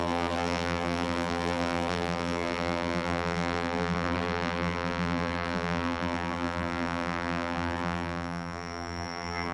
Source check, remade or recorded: remade